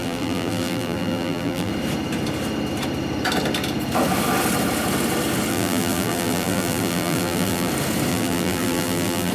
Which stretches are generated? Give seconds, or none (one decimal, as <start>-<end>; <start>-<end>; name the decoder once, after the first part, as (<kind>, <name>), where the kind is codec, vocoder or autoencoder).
0.0-1.7 (vocoder, BigVGAN v2); 5.5-7.7; 8.1-9.3